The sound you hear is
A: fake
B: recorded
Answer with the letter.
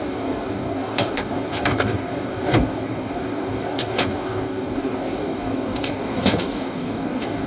A